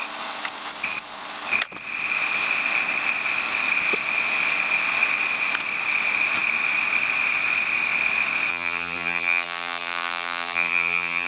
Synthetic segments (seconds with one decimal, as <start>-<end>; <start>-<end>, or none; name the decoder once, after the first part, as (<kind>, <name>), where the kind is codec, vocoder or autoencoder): 8.5-11.3 (vocoder, BigVGAN v2)